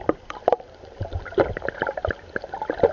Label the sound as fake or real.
fake